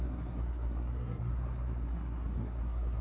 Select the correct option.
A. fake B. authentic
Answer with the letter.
A